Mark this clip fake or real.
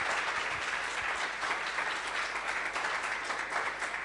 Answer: real